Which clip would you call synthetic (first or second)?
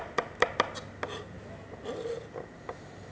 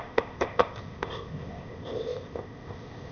second